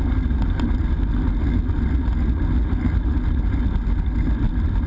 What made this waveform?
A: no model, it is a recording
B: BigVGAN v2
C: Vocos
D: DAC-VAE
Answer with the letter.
A